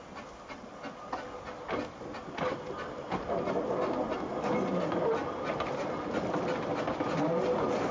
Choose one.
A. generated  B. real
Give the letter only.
B